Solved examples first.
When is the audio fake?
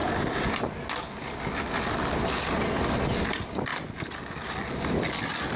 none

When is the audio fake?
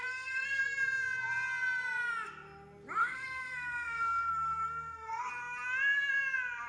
0.0-0.6; 3.0-5.3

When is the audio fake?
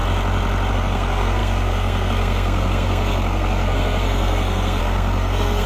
0.7-5.7